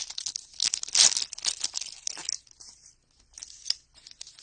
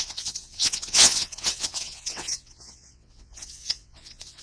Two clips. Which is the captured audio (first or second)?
first